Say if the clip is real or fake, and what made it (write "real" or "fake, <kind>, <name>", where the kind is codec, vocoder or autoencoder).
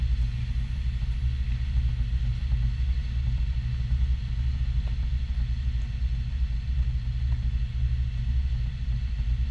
real